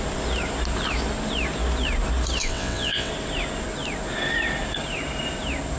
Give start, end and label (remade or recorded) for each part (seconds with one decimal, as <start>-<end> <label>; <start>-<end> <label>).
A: 0.0-2.4 recorded; 2.4-3.1 remade; 3.1-5.8 recorded